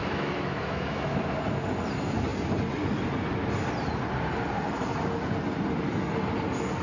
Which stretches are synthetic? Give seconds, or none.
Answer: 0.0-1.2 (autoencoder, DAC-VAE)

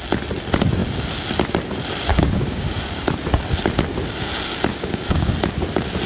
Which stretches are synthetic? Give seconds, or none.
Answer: 2.1-2.8 (codec, DAC); 4.7-5.3

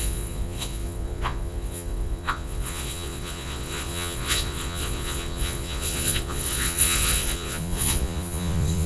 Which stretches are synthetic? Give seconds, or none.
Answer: 0.0-8.9 (vocoder, Vocos)

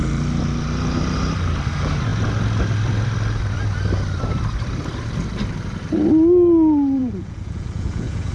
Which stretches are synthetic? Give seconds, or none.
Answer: 7.0-8.3 (vocoder, Vocos)